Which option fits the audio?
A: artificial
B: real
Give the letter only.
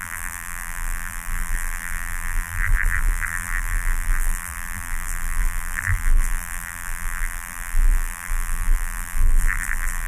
A